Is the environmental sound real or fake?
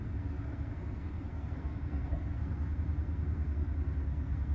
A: fake